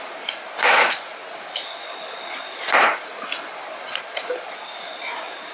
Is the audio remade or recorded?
recorded